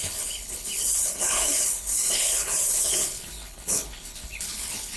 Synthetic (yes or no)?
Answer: yes